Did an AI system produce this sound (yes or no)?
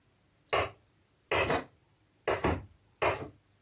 no